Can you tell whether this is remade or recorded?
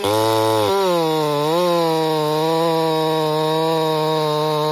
recorded